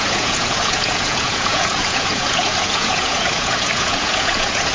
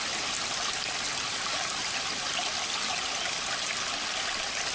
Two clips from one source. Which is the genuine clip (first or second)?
second